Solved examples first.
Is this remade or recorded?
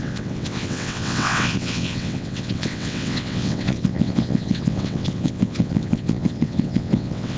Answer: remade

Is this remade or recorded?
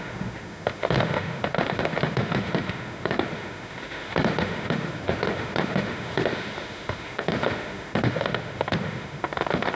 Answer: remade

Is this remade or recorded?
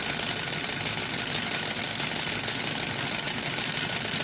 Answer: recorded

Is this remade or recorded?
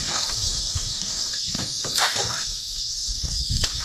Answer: remade